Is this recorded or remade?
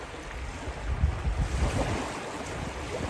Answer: recorded